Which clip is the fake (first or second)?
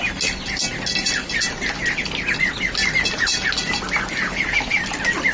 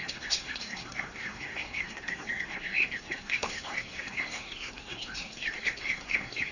second